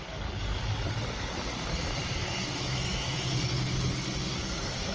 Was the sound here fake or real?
fake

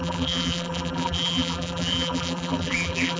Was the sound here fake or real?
fake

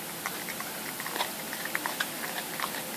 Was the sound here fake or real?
real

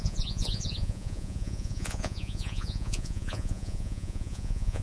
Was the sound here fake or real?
fake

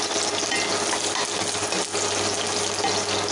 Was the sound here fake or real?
real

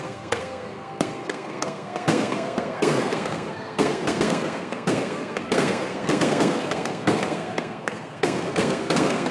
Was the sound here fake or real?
fake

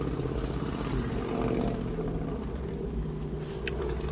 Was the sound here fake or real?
real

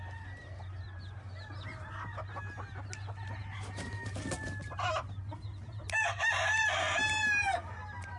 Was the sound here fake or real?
real